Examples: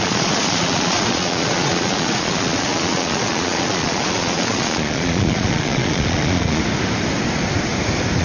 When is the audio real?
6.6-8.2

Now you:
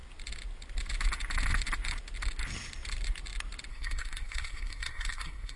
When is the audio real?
0.0-3.7

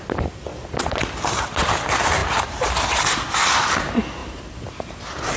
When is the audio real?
0.0-5.4